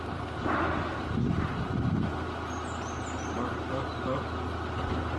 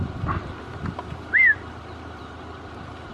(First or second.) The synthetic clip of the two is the second